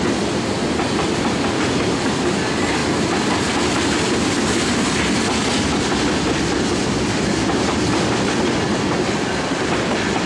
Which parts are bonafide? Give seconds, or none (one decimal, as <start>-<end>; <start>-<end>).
0.0-10.3